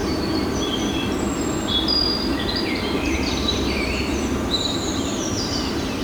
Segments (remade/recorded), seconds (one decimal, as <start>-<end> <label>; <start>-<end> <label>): 0.0-1.1 remade; 1.1-2.3 recorded; 2.3-6.0 remade